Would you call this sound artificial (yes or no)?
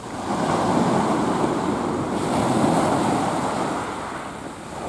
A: no